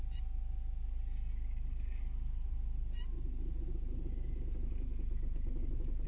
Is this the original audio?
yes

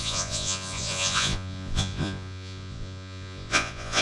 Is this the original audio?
no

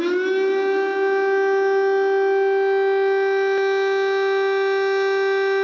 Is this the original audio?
yes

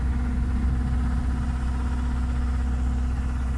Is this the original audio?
yes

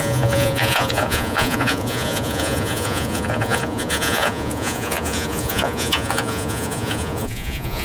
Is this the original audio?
no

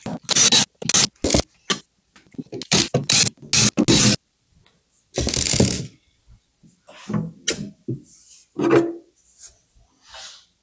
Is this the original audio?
yes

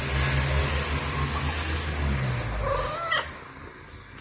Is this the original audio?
yes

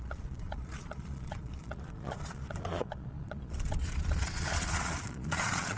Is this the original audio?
no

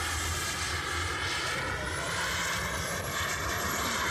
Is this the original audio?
yes